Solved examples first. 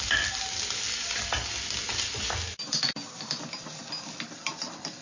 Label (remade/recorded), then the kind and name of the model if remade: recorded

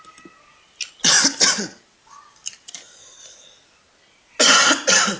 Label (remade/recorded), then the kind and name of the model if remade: recorded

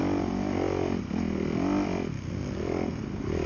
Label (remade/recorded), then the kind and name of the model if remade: recorded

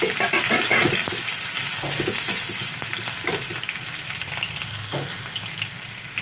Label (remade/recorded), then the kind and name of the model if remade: recorded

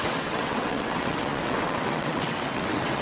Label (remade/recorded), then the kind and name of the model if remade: remade, vocoder, WaveNeXt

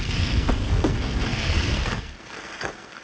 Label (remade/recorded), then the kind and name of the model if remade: remade, codec, SNAC